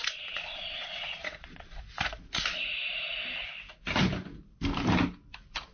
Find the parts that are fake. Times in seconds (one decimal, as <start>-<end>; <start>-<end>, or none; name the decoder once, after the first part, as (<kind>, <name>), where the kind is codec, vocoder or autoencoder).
0.0-1.8 (vocoder, Vocos)